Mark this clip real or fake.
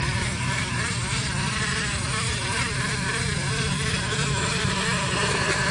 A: fake